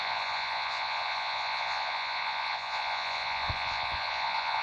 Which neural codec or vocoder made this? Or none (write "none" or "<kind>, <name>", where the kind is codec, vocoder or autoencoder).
vocoder, Vocos